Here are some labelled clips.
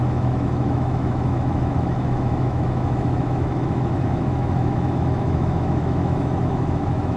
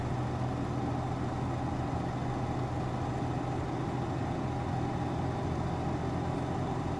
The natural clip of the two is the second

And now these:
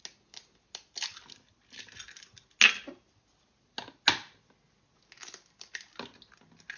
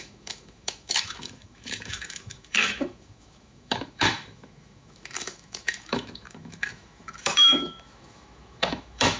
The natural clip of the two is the first